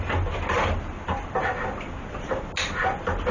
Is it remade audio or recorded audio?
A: recorded